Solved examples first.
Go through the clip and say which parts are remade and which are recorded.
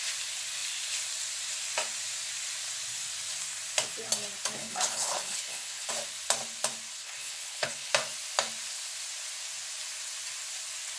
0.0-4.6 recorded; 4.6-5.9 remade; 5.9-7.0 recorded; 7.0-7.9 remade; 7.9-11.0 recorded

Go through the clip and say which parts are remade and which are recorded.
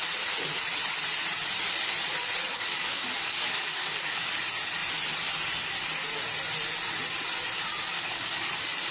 0.0-2.5 recorded; 2.5-4.3 remade; 4.3-7.9 recorded; 7.9-8.5 remade; 8.5-8.9 recorded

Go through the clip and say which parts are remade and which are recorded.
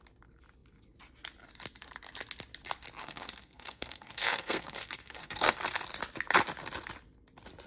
0.0-3.0 recorded; 3.0-5.6 remade; 5.6-7.7 recorded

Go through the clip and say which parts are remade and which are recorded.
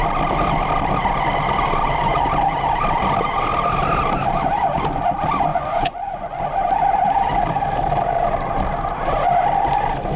0.0-5.5 recorded; 5.5-6.4 remade; 6.4-10.2 recorded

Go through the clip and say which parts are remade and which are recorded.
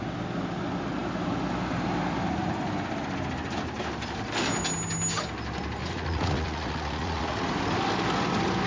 0.0-5.8 recorded; 5.8-7.5 remade; 7.5-8.7 recorded